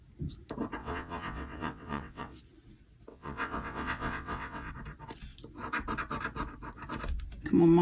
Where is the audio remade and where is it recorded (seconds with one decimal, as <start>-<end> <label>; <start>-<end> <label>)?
0.0-0.8 recorded; 0.8-2.4 remade; 2.4-3.1 recorded; 3.1-4.7 remade; 4.7-7.8 recorded